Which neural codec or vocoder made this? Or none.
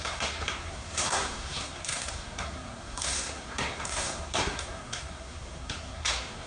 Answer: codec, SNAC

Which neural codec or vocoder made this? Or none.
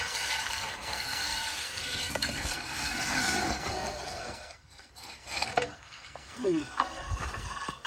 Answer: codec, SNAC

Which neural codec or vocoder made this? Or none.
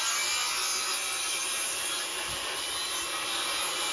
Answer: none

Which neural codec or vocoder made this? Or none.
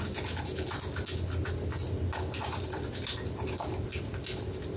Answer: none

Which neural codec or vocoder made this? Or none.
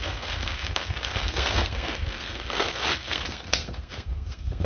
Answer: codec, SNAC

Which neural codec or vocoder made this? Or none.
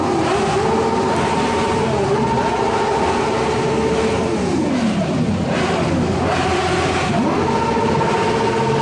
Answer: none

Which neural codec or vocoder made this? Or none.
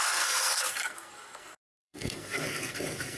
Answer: codec, SNAC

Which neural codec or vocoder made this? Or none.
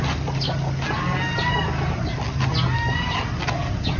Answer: none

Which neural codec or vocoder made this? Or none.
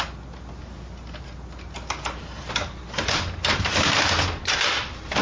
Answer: none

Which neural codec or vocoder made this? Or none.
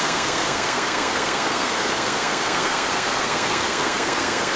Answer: codec, SNAC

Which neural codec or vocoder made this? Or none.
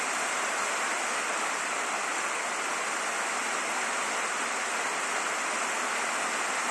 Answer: none